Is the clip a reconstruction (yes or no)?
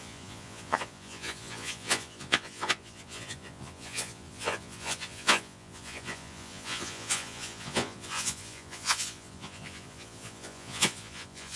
yes